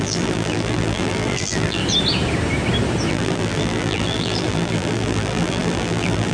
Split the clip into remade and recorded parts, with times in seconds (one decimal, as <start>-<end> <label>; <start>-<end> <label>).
0.0-1.8 remade; 1.8-3.1 recorded; 3.1-6.3 remade